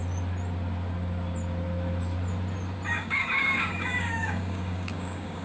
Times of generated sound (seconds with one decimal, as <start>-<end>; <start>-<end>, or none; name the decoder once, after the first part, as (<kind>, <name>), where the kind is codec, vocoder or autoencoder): 2.9-5.4 (codec, DAC)